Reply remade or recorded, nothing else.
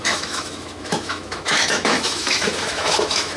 remade